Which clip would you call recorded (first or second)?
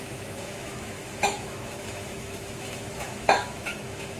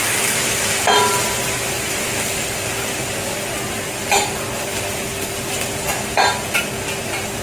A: second